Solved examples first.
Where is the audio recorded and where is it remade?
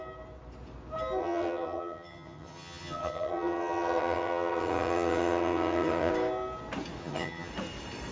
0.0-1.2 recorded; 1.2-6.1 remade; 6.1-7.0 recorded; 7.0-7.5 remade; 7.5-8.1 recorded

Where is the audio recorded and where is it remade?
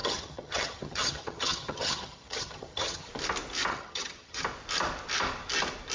0.0-3.1 remade; 3.1-3.7 recorded; 3.7-4.4 remade; 4.4-5.9 recorded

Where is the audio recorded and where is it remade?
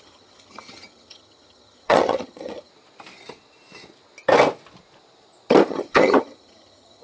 0.0-2.7 remade; 2.7-5.7 recorded; 5.7-7.0 remade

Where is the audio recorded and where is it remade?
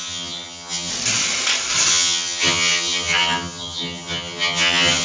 0.0-0.9 remade; 0.9-1.9 recorded; 1.9-5.0 remade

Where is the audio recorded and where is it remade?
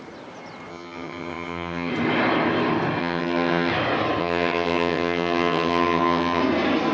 0.0-0.7 recorded; 0.7-1.9 remade; 1.9-3.0 recorded; 3.0-3.7 remade; 3.7-4.2 recorded; 4.2-6.4 remade; 6.4-6.9 recorded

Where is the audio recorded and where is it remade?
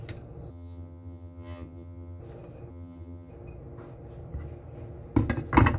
0.0-0.5 recorded; 0.5-2.2 remade; 2.2-2.7 recorded; 2.7-3.3 remade; 3.3-5.8 recorded